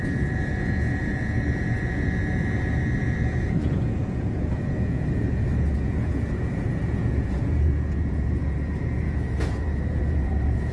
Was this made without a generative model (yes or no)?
no